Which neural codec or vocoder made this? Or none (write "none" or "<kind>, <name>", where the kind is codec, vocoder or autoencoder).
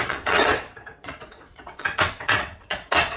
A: vocoder, WaveNeXt